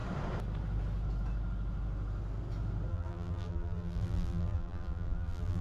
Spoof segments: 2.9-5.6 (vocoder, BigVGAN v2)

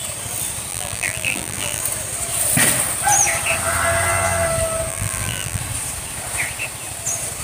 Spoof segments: 0.7-1.8 (vocoder, BigVGAN v2); 4.9-5.6

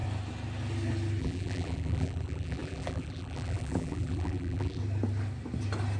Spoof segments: 1.2-4.8 (vocoder, BigVGAN v2)

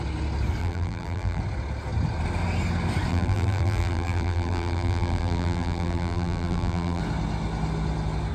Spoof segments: 0.6-1.4 (vocoder, BigVGAN v2); 3.1-7.0

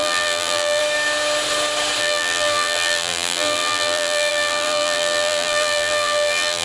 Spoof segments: 0.0-0.8 (vocoder, BigVGAN v2); 2.0-6.6

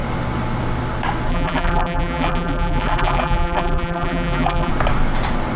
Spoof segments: 1.3-4.7 (vocoder, BigVGAN v2)

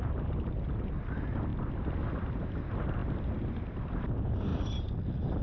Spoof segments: 1.5-2.0 (vocoder, BigVGAN v2)

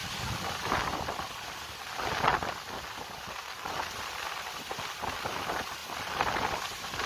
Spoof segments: 4.3-5.8 (vocoder, BigVGAN v2)